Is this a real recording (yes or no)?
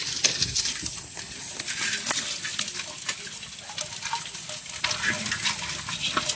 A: yes